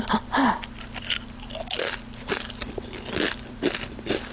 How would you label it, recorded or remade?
recorded